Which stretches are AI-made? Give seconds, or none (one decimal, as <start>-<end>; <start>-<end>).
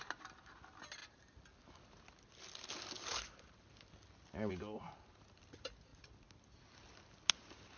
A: none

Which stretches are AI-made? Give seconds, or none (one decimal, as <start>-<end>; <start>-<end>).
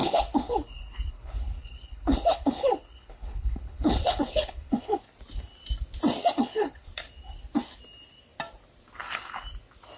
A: 0.0-5.0; 6.4-6.9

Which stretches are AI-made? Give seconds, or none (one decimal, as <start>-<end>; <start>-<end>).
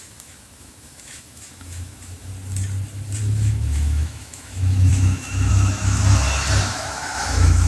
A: 0.0-2.3; 3.2-6.0; 6.6-7.7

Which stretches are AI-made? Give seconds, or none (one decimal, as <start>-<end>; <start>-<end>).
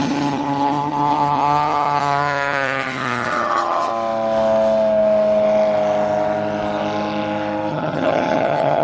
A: 0.0-3.9; 7.7-8.8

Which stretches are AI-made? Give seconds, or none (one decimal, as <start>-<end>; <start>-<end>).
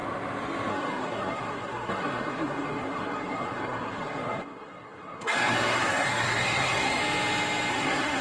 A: 0.7-7.0; 7.7-8.2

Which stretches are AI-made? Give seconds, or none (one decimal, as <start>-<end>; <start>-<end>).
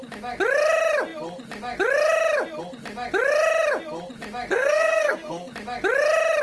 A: 4.5-5.5